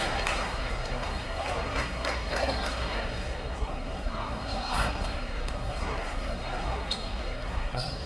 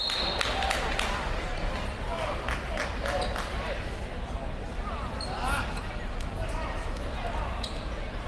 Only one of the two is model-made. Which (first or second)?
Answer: first